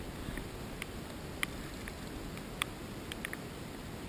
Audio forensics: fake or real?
real